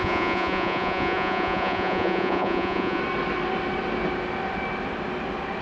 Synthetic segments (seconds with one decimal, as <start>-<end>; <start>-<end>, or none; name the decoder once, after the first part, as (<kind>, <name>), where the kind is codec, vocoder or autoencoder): 0.0-3.0 (vocoder, Vocos)